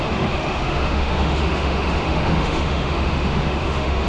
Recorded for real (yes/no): no